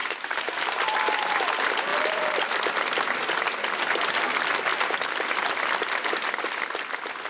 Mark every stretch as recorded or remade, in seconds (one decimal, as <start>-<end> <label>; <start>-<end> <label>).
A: 0.0-0.6 remade; 0.6-1.9 recorded; 1.9-2.6 remade; 2.6-7.3 recorded